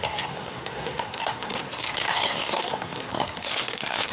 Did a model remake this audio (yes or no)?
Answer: yes